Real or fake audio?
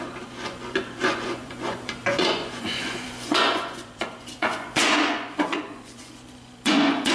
fake